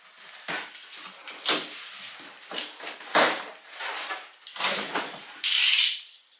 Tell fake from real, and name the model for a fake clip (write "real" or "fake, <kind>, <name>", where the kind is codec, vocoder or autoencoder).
real